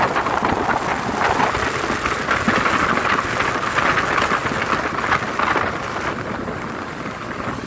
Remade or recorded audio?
recorded